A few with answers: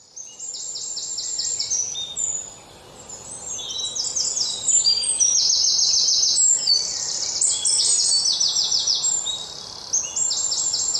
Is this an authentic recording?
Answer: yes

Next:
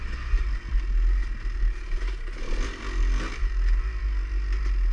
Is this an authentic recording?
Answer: yes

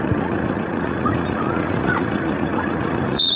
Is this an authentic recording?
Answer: no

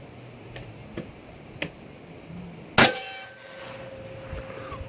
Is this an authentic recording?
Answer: yes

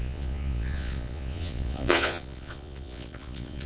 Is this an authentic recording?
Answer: no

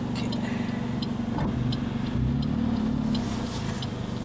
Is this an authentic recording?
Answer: yes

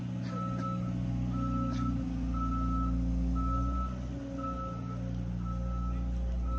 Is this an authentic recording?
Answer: yes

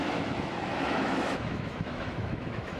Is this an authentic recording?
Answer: no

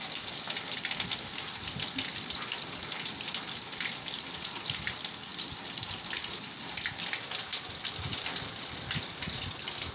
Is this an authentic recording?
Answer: yes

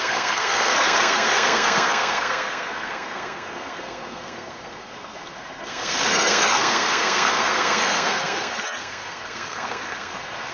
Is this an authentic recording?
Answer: no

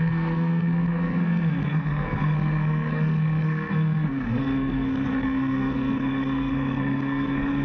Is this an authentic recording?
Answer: no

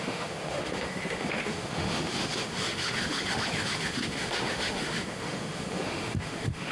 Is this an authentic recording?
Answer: no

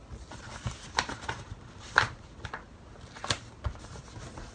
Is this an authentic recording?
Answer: yes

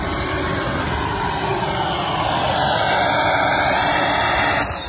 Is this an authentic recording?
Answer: yes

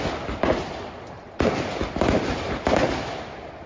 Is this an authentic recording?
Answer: yes